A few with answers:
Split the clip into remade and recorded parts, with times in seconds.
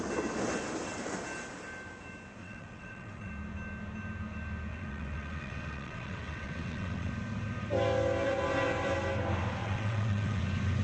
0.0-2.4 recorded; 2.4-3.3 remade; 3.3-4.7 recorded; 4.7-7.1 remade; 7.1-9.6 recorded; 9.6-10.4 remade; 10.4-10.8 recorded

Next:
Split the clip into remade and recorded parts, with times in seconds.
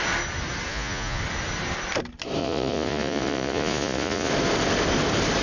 0.0-0.7 recorded; 0.7-1.2 remade; 1.2-2.4 recorded; 2.4-4.3 remade; 4.3-5.4 recorded